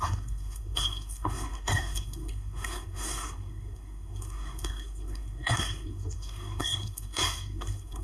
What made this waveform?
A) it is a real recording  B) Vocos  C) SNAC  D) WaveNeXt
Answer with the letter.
C